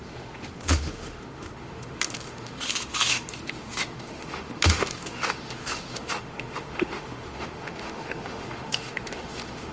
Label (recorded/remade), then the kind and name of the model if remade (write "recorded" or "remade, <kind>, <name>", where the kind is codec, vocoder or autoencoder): remade, autoencoder, DAC-VAE